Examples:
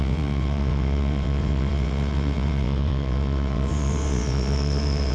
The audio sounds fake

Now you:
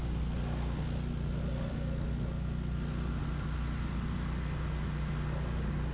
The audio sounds real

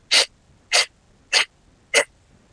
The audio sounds real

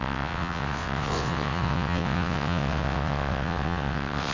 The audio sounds fake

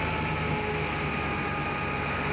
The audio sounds real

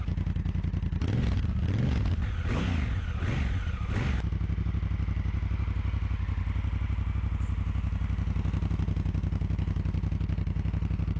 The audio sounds real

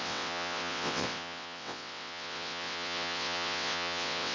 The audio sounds fake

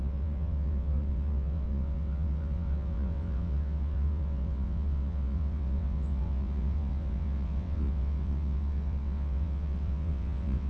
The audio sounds fake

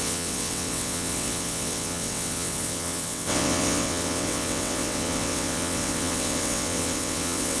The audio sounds fake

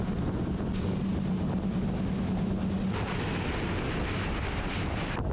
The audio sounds real